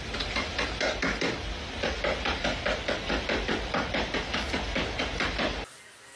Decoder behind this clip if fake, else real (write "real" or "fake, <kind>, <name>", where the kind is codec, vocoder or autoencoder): real